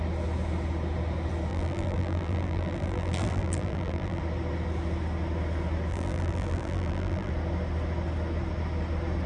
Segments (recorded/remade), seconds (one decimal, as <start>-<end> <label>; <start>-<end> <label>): 0.0-1.5 recorded; 1.5-4.2 remade; 4.2-5.9 recorded; 5.9-7.3 remade; 7.3-9.3 recorded